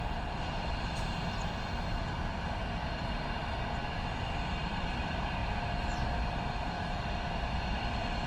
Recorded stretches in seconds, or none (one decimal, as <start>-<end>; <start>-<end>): 1.2-1.9; 3.4-4.5